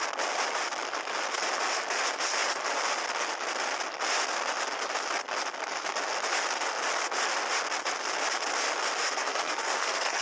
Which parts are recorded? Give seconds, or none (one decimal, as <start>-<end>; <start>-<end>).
0.0-9.0